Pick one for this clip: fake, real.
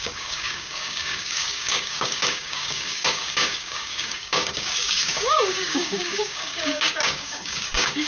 fake